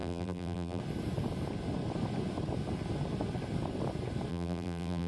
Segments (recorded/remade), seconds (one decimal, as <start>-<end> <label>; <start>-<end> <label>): 0.0-0.8 remade; 0.8-4.3 recorded; 4.3-5.1 remade